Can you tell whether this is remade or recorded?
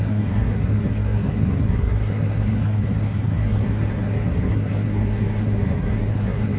remade